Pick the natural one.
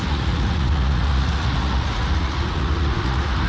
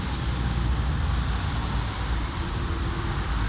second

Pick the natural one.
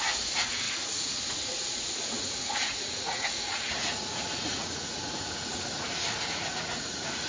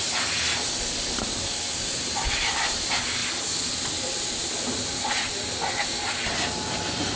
second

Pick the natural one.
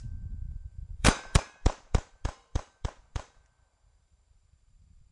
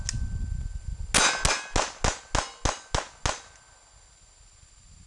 second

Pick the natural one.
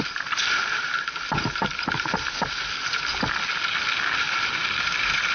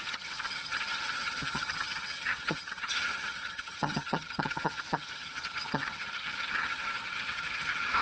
first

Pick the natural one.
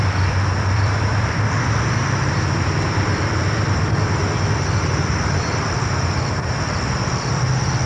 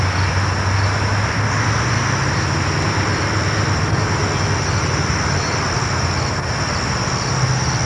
second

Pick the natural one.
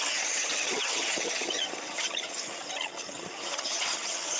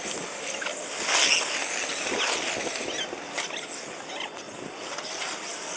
second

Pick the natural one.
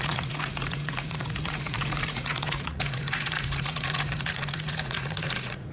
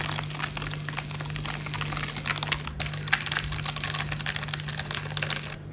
second